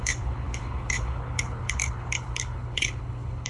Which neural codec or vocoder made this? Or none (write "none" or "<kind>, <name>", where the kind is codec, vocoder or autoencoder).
codec, HILCodec